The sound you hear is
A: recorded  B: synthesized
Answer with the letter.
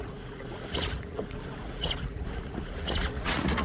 B